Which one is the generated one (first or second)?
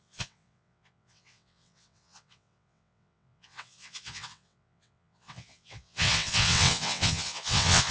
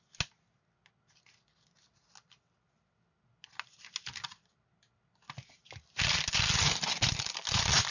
first